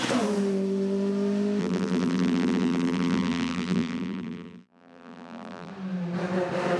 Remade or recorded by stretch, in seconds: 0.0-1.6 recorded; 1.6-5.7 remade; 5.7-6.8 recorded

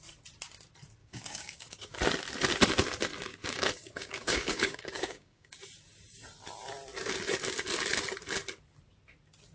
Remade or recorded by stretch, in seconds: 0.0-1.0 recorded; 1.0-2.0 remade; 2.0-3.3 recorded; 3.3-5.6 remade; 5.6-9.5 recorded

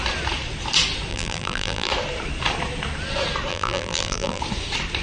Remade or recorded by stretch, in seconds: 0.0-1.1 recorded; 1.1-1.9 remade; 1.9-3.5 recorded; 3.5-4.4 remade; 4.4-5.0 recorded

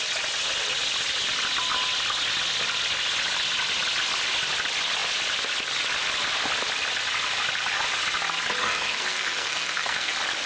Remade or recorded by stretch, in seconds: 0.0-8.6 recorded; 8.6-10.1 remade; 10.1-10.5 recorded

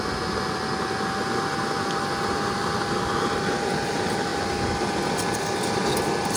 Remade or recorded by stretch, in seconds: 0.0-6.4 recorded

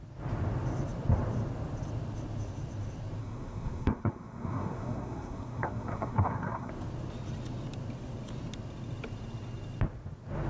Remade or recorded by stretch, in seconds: 0.0-3.2 recorded; 3.2-6.7 remade; 6.7-10.5 recorded